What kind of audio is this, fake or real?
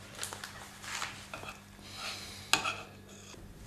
real